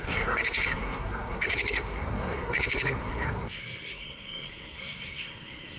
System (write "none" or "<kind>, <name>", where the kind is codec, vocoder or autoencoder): codec, SNAC